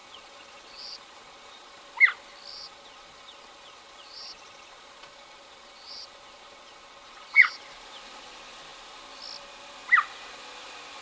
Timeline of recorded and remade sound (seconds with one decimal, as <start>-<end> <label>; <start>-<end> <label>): 0.0-1.8 remade; 1.8-2.5 recorded; 2.5-7.6 remade; 7.6-11.0 recorded